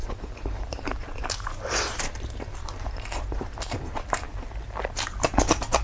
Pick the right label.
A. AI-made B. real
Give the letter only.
A